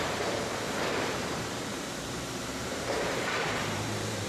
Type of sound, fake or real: fake